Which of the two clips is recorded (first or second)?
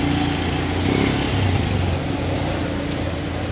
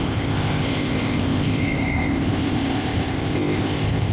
first